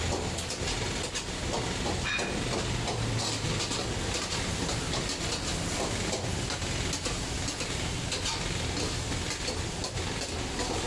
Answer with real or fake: real